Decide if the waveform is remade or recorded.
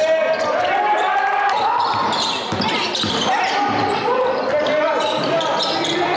recorded